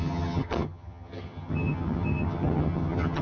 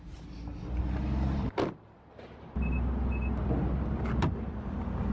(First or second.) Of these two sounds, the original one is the second